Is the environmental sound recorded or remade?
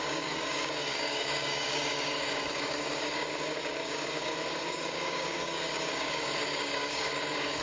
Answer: remade